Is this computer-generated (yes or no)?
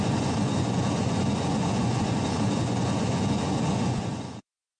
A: yes